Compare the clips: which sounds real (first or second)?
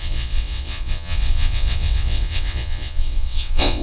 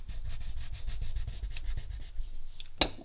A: second